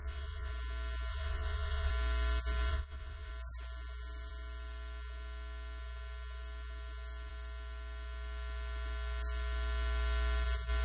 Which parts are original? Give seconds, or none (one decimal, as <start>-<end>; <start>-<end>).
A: 0.5-1.1; 1.9-2.7; 3.3-10.8